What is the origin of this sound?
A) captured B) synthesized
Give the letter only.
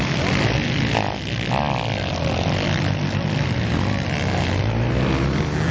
A